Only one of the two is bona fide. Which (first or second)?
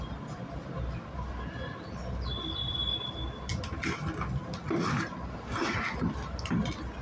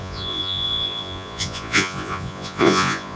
first